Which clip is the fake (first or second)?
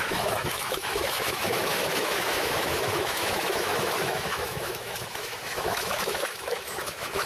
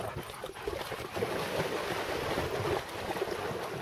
first